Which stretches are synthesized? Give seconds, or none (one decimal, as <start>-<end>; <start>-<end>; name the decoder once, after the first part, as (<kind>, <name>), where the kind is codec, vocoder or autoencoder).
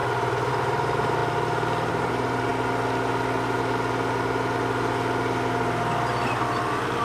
0.5-1.2 (vocoder, BigVGAN v2); 1.9-2.5